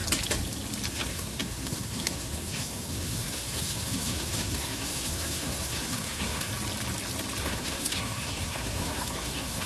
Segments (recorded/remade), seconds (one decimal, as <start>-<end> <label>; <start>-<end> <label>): 0.0-0.9 recorded; 0.9-6.5 remade; 6.5-7.4 recorded; 7.4-9.7 remade